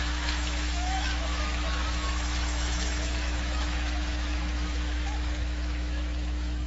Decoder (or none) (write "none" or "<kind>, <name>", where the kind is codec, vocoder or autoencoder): autoencoder, DAC-VAE